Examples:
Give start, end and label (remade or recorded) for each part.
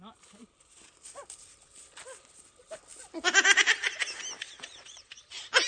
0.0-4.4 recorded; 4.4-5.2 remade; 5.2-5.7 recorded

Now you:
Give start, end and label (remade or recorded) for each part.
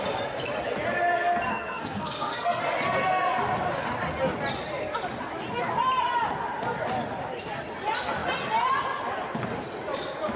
0.0-1.5 recorded; 1.5-2.6 remade; 2.6-10.4 recorded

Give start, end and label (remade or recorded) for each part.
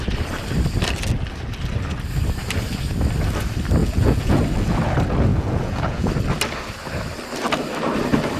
0.0-3.8 recorded; 3.8-4.3 remade; 4.3-5.3 recorded; 5.3-6.1 remade; 6.1-8.4 recorded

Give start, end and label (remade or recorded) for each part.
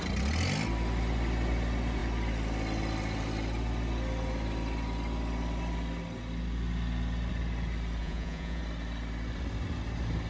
0.0-8.0 recorded; 8.0-8.6 remade; 8.6-10.3 recorded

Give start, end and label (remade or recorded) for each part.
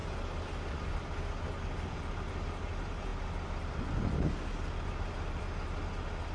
0.0-6.3 recorded